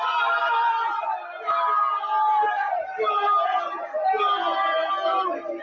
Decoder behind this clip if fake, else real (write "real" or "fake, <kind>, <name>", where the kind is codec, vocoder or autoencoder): real